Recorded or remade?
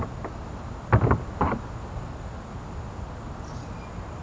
recorded